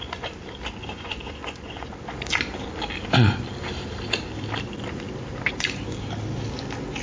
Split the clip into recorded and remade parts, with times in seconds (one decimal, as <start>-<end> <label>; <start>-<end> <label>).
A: 0.0-0.9 recorded; 0.9-1.9 remade; 1.9-7.0 recorded